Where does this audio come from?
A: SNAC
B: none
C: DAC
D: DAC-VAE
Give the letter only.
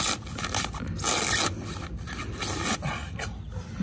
B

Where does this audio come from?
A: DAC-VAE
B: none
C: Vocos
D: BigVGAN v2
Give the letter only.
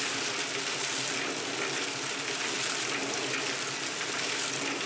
B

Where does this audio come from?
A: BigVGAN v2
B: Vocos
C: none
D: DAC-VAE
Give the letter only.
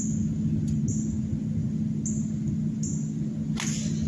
C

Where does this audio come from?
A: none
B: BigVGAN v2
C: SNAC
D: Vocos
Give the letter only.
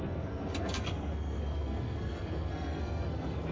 C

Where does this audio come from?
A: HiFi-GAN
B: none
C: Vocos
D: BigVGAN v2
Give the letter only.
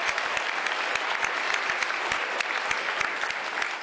B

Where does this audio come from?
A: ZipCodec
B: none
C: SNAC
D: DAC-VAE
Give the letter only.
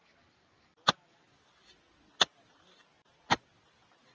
B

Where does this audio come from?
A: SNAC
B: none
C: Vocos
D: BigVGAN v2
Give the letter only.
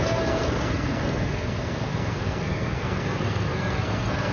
A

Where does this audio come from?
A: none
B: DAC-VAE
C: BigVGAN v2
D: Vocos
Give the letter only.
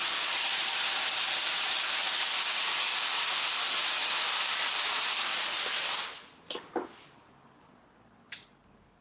A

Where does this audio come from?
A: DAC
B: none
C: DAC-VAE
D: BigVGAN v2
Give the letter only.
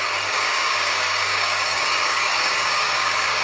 A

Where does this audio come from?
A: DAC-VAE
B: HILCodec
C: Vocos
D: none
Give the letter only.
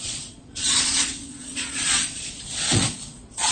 C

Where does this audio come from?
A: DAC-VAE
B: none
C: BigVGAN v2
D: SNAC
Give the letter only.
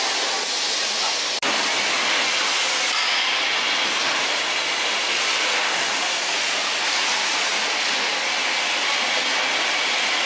B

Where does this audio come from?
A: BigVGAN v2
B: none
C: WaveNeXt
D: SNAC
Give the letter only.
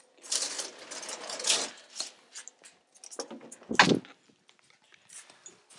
B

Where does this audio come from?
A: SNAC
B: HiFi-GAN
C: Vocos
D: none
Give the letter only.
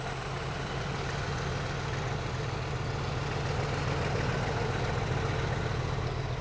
D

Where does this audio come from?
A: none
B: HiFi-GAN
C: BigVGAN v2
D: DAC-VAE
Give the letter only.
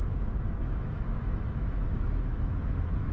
D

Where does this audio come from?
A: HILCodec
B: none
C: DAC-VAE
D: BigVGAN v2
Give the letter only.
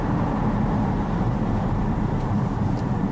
D